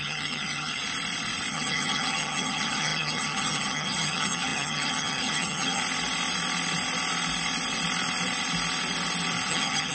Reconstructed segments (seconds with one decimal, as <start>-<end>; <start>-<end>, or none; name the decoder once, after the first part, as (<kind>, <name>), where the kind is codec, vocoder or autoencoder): 0.0-0.8 (vocoder, HiFi-GAN); 1.5-5.8; 9.5-9.9